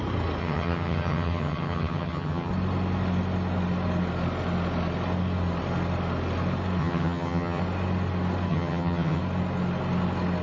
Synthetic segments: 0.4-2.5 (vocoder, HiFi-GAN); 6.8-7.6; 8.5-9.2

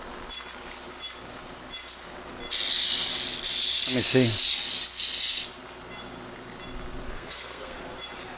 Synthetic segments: 7.1-7.8 (codec, SNAC)